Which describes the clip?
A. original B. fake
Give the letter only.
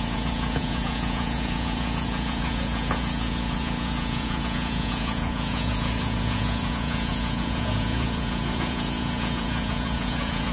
B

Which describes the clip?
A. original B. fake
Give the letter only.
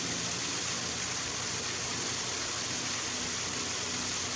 A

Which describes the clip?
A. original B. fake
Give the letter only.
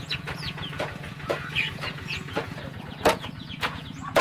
B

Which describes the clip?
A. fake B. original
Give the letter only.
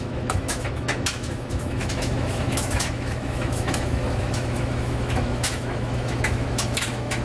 A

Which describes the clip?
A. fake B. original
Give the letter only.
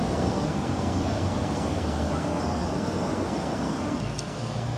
A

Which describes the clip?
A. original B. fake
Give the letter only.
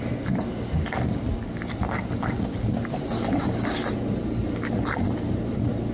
A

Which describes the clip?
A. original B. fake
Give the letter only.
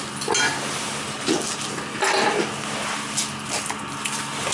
A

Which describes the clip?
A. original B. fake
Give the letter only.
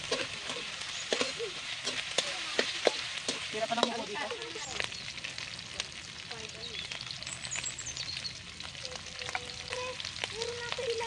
A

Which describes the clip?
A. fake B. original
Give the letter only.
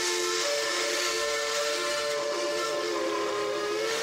A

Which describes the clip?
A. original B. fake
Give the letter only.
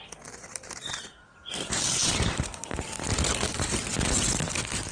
A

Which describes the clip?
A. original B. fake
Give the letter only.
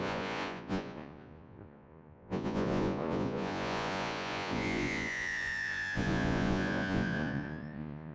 B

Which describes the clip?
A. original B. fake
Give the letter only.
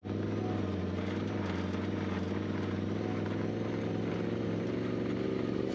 A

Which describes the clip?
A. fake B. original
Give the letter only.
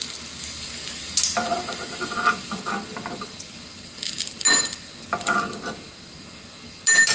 B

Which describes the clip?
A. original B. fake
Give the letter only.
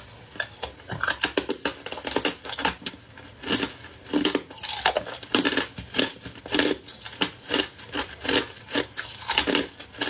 A